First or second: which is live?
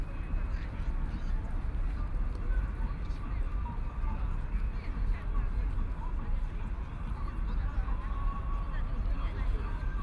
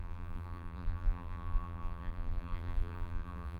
first